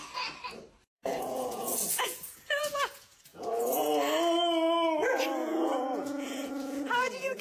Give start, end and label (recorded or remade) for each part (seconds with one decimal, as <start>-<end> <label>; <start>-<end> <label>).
0.0-0.9 recorded; 0.9-3.9 remade; 3.9-5.4 recorded; 5.4-7.4 remade

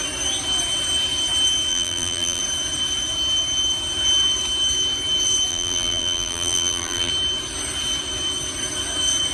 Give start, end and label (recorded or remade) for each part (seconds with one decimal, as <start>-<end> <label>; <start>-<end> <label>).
0.0-1.7 recorded; 1.7-2.4 remade; 2.4-5.5 recorded; 5.5-7.1 remade; 7.1-9.3 recorded

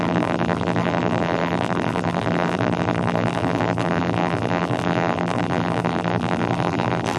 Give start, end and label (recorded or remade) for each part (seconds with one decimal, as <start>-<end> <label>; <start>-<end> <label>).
0.0-7.2 remade